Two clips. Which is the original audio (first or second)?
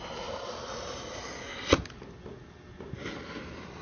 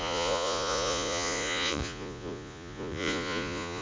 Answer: first